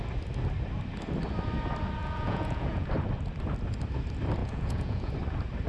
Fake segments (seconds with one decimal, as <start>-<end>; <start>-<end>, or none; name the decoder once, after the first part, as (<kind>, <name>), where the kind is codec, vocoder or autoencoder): 2.0-2.9 (vocoder, Vocos); 4.4-5.1